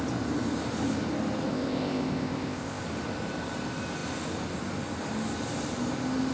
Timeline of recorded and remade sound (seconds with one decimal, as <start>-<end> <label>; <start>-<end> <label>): 0.0-1.5 recorded; 1.5-2.8 remade; 2.8-6.3 recorded